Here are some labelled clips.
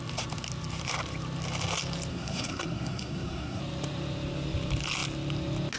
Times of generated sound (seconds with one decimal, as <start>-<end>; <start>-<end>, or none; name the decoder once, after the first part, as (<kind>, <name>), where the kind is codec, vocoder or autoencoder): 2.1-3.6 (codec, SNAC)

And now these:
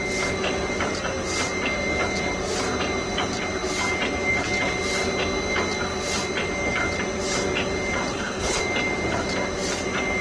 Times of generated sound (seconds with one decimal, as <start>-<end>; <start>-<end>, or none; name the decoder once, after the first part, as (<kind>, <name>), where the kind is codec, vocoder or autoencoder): 8.1-8.6 (codec, HILCodec)

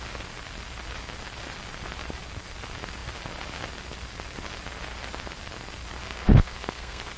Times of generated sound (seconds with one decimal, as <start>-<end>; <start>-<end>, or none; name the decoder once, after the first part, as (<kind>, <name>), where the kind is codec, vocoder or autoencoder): 6.0-7.2 (codec, SNAC)

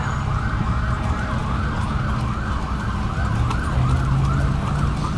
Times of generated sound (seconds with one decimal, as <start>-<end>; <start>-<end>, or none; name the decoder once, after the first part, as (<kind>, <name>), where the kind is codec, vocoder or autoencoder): none

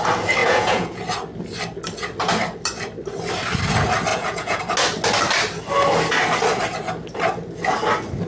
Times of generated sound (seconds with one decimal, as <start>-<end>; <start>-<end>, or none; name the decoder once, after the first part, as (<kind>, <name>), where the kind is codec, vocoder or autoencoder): 0.4-1.0 (vocoder, Vocos); 4.1-4.6

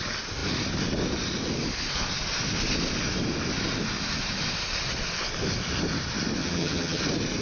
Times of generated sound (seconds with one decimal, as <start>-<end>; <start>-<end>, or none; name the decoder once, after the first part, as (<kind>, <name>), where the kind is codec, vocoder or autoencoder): 6.4-7.0 (vocoder, HiFi-GAN)

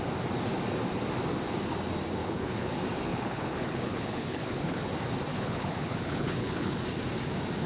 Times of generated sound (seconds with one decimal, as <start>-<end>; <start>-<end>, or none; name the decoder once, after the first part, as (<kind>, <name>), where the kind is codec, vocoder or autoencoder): 2.2-2.7 (codec, HILCodec); 3.1-4.8; 5.3-6.8

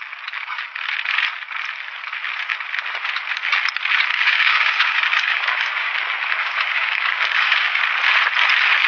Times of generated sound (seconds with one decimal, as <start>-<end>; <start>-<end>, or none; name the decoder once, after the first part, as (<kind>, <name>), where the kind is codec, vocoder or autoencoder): 4.1-5.9 (codec, DAC); 6.4-7.8